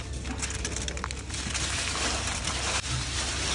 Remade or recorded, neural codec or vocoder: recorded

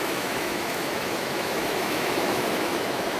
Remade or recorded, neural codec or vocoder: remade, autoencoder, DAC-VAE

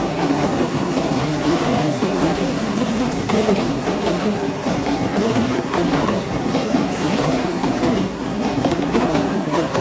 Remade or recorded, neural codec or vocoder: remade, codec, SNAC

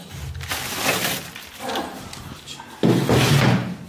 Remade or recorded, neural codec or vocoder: recorded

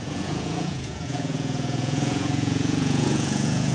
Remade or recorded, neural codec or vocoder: remade, vocoder, Vocos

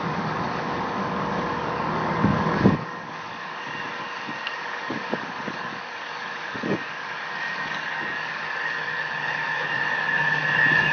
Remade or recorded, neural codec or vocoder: remade, codec, DAC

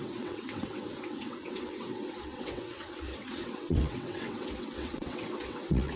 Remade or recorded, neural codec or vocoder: remade, vocoder, WaveNeXt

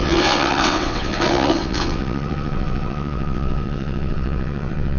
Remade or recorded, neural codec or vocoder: remade, vocoder, WaveNeXt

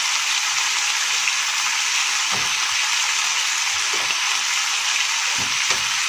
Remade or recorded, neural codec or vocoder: recorded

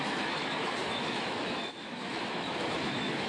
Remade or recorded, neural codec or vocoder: remade, autoencoder, DAC-VAE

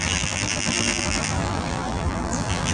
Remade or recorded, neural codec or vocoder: remade, vocoder, BigVGAN v2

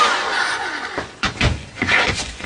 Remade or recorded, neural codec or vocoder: remade, vocoder, Vocos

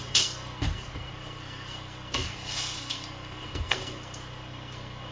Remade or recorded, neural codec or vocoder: remade, codec, SNAC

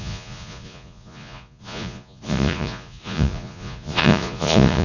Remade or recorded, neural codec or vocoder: remade, vocoder, Vocos